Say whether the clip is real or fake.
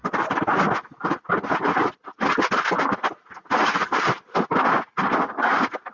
real